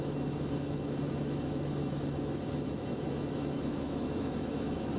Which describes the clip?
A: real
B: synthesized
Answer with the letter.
B